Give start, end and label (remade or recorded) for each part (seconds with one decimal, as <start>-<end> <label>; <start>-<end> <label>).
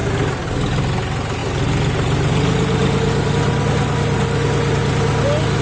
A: 0.0-5.6 recorded